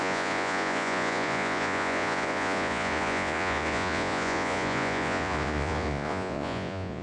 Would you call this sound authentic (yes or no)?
no